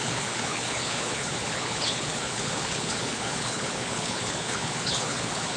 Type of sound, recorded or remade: remade